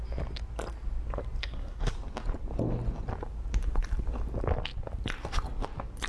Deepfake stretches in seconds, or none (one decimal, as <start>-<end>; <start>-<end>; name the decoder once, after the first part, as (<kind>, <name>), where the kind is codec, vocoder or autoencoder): 1.4-1.9 (codec, SNAC)